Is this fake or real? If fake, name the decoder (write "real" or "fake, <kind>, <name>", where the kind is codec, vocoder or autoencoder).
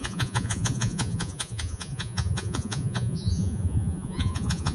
fake, vocoder, Vocos